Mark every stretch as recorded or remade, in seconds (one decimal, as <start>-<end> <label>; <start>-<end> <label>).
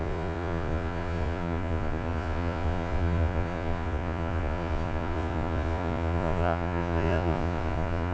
0.0-8.1 remade